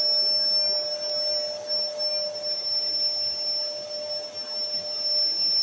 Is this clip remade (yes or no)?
no